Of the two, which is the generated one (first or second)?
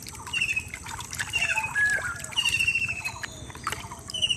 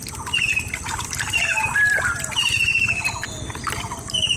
first